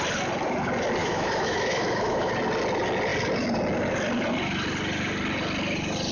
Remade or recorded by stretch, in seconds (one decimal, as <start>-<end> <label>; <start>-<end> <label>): 0.0-1.0 recorded; 1.0-2.3 remade; 2.3-6.1 recorded